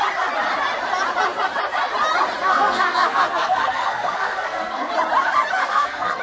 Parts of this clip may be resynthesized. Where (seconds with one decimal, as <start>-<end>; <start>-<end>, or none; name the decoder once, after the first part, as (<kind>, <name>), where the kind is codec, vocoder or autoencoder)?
2.4-4.9 (codec, SNAC); 5.6-6.2